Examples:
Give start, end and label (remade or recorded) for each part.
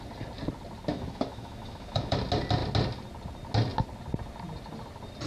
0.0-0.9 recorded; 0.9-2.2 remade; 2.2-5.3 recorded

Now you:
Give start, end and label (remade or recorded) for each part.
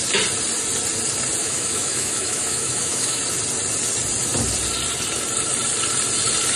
0.0-1.4 recorded; 1.4-3.2 remade; 3.2-6.6 recorded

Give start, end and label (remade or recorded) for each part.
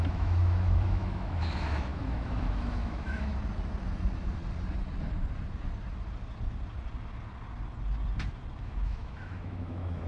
0.0-3.3 remade; 3.3-8.6 recorded; 8.6-10.1 remade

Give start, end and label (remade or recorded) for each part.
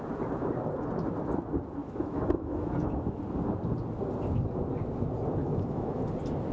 0.0-1.8 recorded; 1.8-3.2 remade; 3.2-5.4 recorded; 5.4-6.0 remade; 6.0-6.5 recorded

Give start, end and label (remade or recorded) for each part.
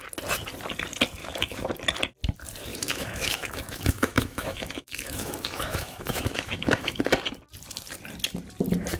0.0-1.2 recorded; 1.2-1.8 remade; 1.8-2.7 recorded; 2.7-7.0 remade; 7.0-9.0 recorded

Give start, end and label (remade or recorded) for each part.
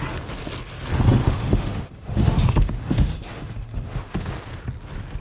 0.0-1.2 recorded; 1.2-4.3 remade; 4.3-5.2 recorded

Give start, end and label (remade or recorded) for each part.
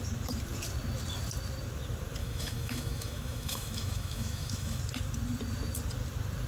0.0-2.2 recorded; 2.2-4.8 remade; 4.8-6.5 recorded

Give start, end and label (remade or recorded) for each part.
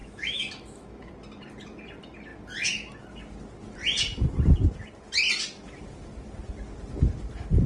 0.0-1.1 remade; 1.1-7.7 recorded